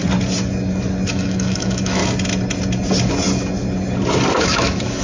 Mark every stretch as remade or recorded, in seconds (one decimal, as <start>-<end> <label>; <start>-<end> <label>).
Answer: 0.0-1.1 recorded; 1.1-2.0 remade; 2.0-4.4 recorded; 4.4-5.0 remade